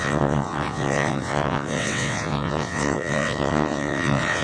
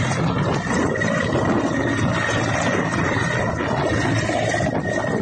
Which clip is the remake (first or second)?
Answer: first